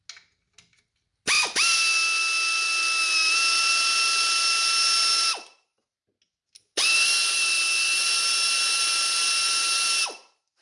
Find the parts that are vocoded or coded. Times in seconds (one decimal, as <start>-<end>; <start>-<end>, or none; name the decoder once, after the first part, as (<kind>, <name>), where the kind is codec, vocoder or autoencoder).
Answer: none